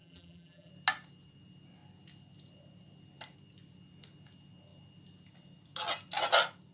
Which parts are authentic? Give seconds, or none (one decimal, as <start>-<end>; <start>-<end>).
0.7-6.7